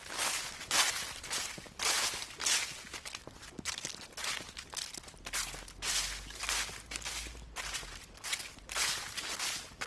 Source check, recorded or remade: recorded